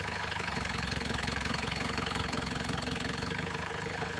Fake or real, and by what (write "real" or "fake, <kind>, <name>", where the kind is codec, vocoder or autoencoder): fake, codec, HILCodec